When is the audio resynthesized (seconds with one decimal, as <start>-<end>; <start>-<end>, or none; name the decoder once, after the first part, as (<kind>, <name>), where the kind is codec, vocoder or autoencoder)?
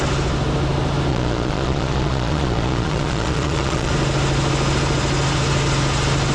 1.1-3.9 (vocoder, Vocos)